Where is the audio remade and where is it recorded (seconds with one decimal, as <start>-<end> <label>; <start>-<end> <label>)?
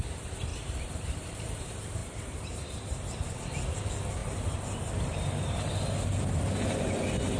0.0-0.5 recorded; 0.5-1.4 remade; 1.4-2.0 recorded; 2.0-3.4 remade; 3.4-4.2 recorded; 4.2-5.7 remade; 5.7-7.4 recorded